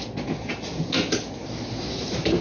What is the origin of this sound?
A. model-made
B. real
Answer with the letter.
B